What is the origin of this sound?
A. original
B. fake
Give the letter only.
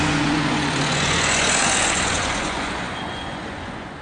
B